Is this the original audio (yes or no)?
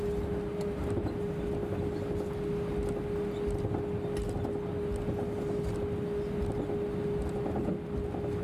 yes